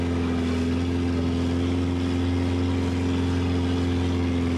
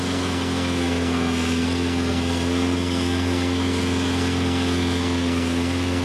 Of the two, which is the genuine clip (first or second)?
first